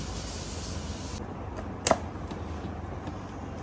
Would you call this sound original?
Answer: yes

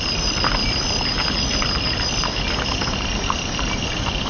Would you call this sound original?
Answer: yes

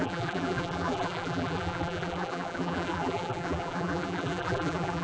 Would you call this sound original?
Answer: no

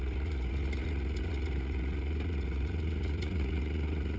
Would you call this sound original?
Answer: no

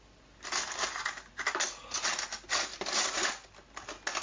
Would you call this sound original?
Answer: yes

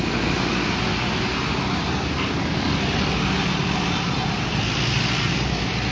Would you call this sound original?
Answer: yes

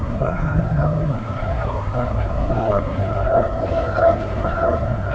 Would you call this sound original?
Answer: no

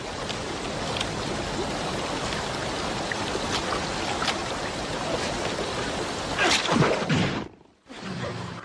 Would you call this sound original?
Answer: no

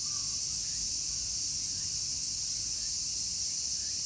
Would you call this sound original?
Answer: yes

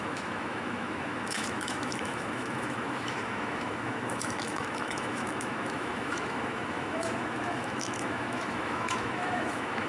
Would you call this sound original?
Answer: no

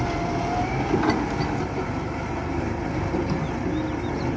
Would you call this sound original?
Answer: yes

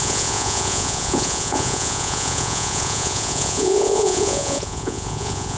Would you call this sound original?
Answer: no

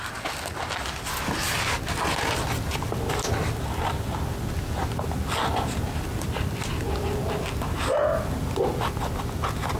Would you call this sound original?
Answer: yes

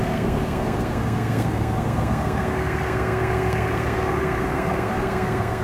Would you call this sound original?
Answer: no